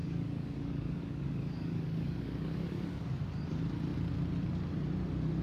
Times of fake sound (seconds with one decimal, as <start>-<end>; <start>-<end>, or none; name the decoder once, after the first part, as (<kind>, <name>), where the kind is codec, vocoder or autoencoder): 0.0-3.2 (codec, DAC)